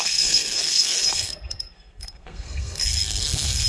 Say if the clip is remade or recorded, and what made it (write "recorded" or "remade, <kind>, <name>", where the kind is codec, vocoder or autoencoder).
remade, codec, SNAC